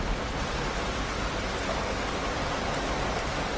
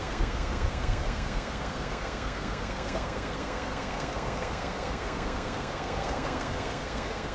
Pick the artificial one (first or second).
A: second